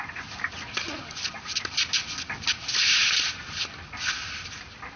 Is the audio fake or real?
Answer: real